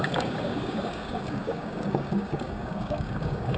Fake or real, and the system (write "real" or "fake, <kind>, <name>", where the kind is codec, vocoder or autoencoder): fake, codec, DAC